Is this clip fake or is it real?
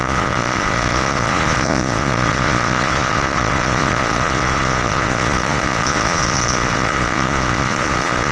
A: fake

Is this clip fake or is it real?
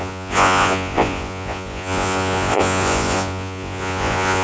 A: fake